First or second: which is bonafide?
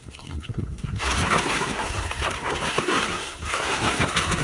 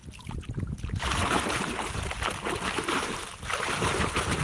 second